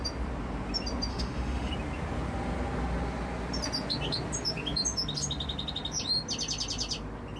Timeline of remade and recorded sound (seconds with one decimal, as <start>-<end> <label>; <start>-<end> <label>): 0.0-1.1 recorded; 1.1-1.7 remade; 1.7-7.4 recorded